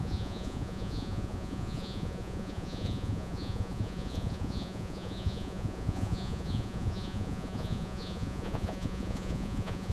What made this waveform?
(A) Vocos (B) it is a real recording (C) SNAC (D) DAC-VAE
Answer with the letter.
A